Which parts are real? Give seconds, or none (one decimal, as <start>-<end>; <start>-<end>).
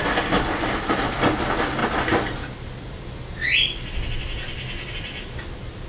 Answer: 0.0-5.9